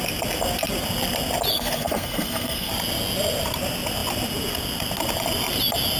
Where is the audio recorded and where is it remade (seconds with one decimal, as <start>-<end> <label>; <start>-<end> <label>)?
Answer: 0.0-1.5 recorded; 1.5-2.7 remade; 2.7-6.0 recorded